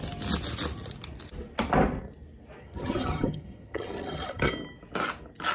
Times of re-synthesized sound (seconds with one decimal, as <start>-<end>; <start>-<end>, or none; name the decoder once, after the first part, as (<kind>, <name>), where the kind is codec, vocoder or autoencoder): 2.6-4.5 (vocoder, HiFi-GAN)